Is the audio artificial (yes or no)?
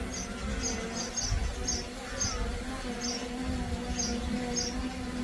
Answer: no